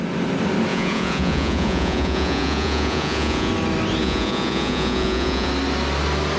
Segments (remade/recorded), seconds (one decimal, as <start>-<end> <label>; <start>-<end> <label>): 0.0-0.7 recorded; 0.7-3.5 remade; 3.5-4.0 recorded; 4.0-5.5 remade; 5.5-6.4 recorded